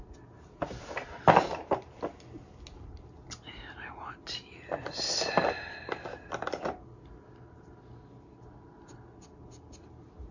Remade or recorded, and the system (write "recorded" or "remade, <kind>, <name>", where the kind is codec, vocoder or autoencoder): recorded